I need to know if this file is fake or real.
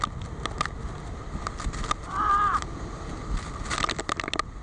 real